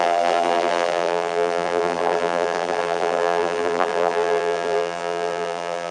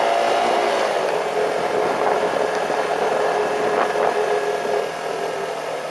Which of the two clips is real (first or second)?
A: second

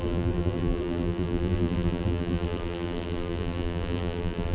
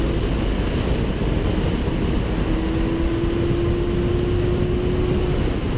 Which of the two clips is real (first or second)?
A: second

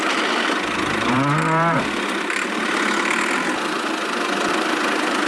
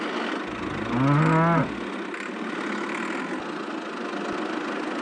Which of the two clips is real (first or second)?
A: second